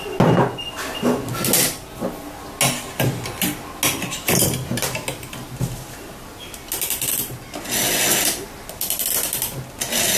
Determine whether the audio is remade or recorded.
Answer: recorded